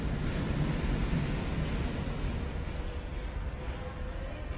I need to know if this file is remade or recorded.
recorded